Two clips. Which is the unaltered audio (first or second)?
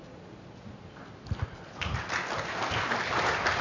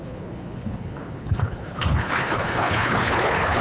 first